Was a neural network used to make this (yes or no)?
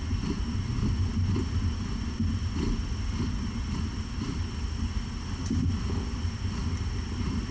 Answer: no